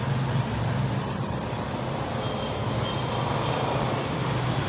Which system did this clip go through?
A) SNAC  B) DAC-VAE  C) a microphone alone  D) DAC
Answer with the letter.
C